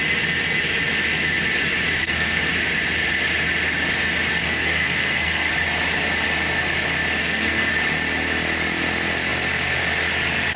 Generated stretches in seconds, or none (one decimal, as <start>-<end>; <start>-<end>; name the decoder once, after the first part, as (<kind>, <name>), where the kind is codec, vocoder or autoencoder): 2.0-2.5 (codec, SNAC); 4.4-5.5; 7.2-7.7